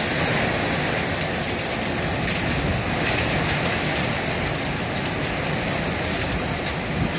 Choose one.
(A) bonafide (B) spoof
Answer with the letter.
A